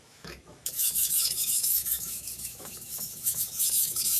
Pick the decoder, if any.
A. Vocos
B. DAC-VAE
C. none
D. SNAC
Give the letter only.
B